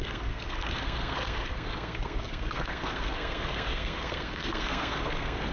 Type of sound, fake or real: fake